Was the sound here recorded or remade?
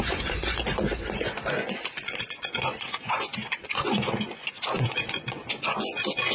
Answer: remade